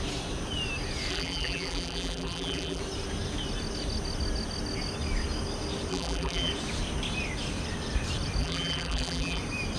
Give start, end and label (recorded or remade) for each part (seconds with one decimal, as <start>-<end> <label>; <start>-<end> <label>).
0.0-1.1 recorded; 1.1-2.8 remade; 2.8-5.9 recorded; 5.9-6.5 remade; 6.5-8.4 recorded; 8.4-9.4 remade; 9.4-9.8 recorded